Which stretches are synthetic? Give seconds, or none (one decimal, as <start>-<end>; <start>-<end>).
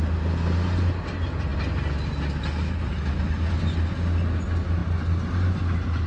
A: none